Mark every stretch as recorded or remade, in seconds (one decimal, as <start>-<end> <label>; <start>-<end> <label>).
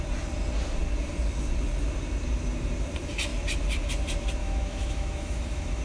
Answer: 0.0-4.4 recorded; 4.4-5.8 remade